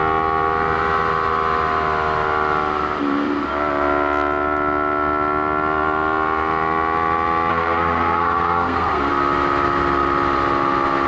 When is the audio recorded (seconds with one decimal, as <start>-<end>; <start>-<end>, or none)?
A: 0.0-7.5; 9.1-11.1